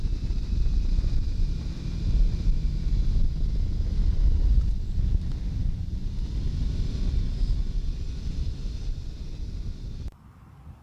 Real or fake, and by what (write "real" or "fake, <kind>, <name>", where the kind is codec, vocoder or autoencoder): real